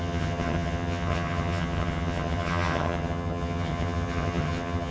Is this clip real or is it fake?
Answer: fake